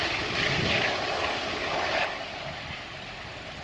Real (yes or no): yes